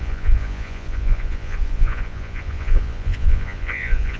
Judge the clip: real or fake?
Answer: fake